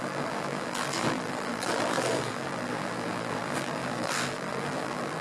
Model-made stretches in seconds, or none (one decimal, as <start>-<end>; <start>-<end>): 0.0-5.2